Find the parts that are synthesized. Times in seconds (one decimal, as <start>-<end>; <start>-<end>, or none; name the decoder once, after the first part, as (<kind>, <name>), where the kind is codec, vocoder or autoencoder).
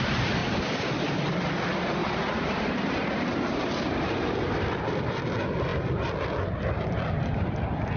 0.4-1.2 (vocoder, BigVGAN v2); 2.0-5.2